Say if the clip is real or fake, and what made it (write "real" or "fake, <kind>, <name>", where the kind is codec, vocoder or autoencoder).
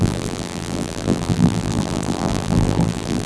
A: fake, vocoder, BigVGAN v2